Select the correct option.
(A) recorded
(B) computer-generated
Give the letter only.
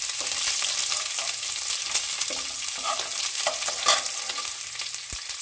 A